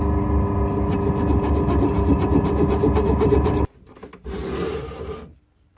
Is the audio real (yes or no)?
yes